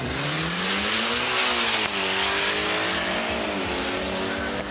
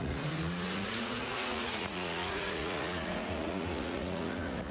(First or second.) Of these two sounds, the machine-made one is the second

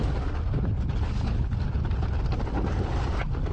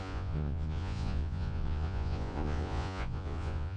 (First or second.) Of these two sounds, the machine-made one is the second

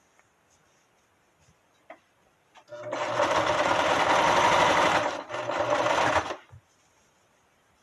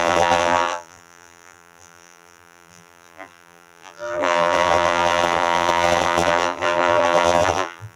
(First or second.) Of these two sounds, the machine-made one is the second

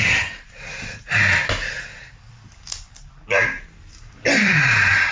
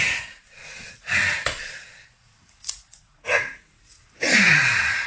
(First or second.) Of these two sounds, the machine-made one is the second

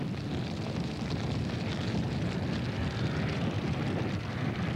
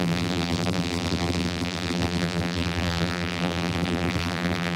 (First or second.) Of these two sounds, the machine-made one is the second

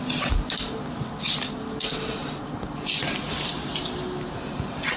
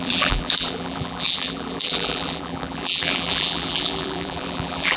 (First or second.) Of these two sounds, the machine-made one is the second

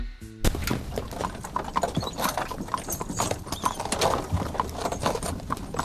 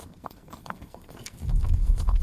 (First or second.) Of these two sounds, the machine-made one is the second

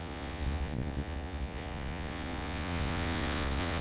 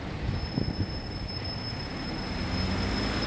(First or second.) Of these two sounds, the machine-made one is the first